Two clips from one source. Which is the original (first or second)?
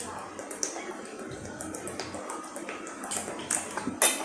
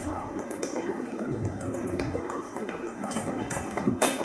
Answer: first